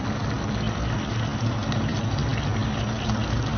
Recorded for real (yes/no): yes